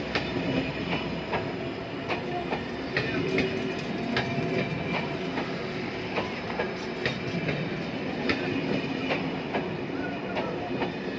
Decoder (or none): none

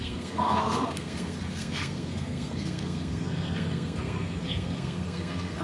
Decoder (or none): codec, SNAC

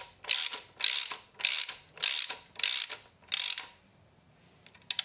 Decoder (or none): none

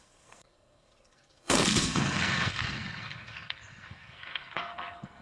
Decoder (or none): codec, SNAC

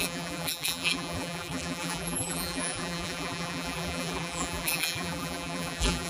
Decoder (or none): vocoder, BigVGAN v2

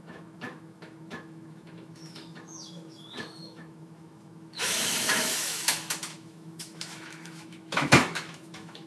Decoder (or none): autoencoder, DAC-VAE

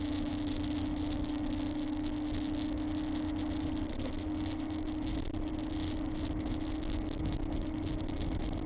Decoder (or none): none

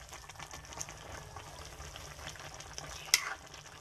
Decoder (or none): none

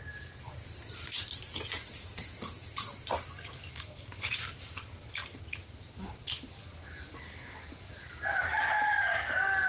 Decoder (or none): none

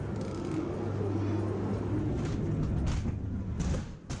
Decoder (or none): none